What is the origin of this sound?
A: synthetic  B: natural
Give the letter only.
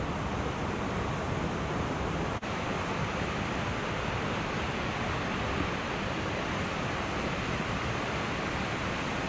B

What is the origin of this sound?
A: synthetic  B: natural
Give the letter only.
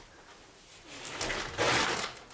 B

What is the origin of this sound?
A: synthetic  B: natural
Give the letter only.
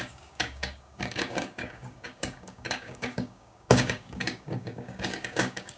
A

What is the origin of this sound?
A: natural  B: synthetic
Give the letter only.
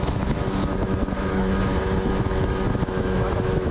B